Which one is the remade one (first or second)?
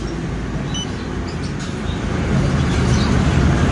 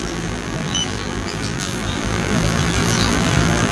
second